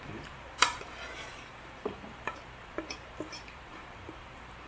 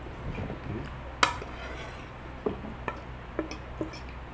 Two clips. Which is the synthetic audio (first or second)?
first